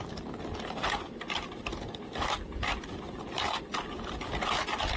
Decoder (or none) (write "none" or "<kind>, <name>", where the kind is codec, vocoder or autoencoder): none